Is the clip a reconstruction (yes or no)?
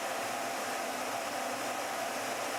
yes